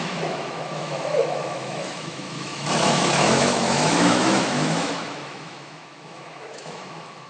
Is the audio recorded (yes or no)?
no